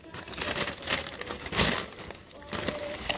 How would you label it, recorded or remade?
recorded